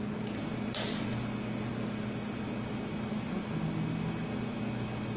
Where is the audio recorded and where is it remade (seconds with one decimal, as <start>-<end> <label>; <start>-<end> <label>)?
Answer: 0.0-5.2 recorded